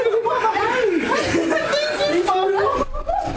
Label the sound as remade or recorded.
recorded